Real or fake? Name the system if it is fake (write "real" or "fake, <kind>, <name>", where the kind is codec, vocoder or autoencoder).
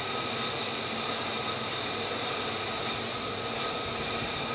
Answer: real